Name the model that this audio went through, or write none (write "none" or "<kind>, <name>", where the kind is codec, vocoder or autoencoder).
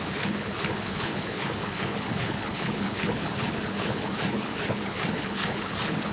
codec, HILCodec